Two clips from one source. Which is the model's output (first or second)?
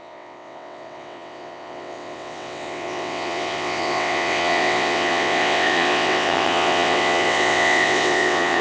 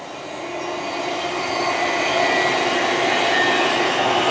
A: first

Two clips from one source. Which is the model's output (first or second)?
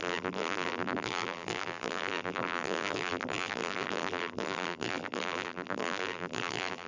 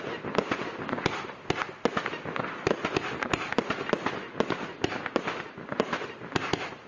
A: first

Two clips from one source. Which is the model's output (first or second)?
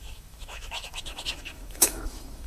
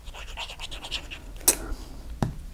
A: first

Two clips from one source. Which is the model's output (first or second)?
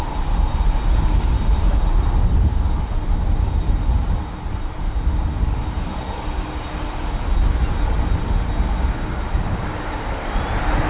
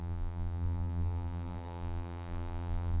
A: second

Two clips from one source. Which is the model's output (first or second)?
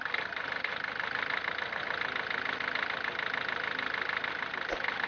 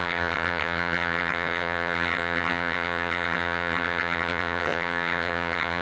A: second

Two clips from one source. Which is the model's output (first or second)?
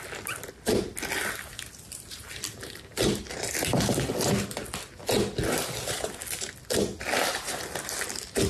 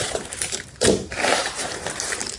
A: second